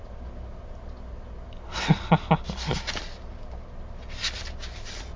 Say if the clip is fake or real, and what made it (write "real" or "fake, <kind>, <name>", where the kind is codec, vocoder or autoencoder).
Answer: real